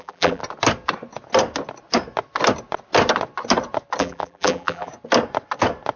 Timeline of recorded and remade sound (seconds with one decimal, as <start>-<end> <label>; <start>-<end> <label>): 0.0-0.4 remade; 0.4-4.0 recorded; 4.0-4.9 remade; 4.9-6.0 recorded